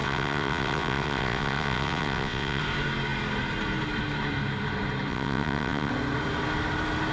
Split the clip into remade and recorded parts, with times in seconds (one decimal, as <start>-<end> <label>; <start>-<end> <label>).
0.0-2.6 remade; 2.6-5.1 recorded; 5.1-5.9 remade; 5.9-7.1 recorded